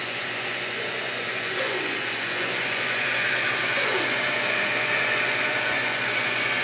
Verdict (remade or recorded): remade